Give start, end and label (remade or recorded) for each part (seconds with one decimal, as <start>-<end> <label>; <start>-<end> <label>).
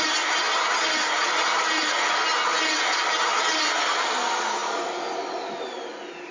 0.0-6.3 recorded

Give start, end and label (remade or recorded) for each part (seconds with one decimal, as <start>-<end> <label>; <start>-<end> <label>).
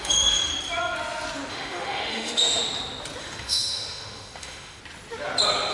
0.0-0.5 remade; 0.5-1.5 recorded; 1.5-2.6 remade; 2.6-3.2 recorded; 3.2-4.8 remade; 4.8-5.7 recorded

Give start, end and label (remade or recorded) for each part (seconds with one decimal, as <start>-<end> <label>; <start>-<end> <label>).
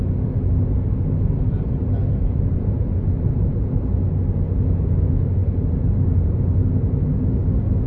0.0-2.2 recorded; 2.2-3.8 remade; 3.8-5.4 recorded; 5.4-6.4 remade; 6.4-7.9 recorded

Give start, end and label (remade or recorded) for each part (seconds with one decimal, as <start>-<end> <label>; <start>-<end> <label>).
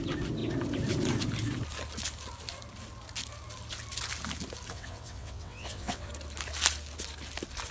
0.0-4.7 recorded; 4.7-6.1 remade; 6.1-7.7 recorded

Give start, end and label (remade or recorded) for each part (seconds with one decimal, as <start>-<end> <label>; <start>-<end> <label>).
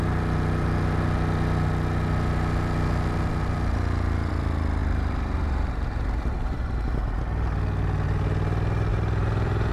0.0-4.8 recorded; 4.8-7.2 remade; 7.2-8.9 recorded; 8.9-9.7 remade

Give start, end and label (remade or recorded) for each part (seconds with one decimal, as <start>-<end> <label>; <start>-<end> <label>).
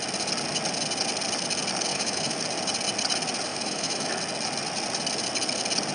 0.0-1.9 recorded; 1.9-2.4 remade; 2.4-3.5 recorded; 3.5-4.1 remade; 4.1-5.9 recorded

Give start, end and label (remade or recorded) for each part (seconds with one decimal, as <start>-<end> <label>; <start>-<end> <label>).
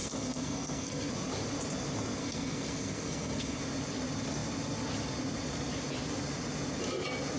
0.0-1.1 remade; 1.1-2.2 recorded; 2.2-3.6 remade; 3.6-7.4 recorded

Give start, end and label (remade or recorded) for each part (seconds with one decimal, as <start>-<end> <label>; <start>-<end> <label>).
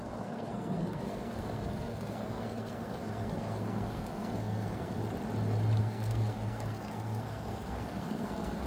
0.0-5.0 remade; 5.0-5.8 recorded; 5.8-8.7 remade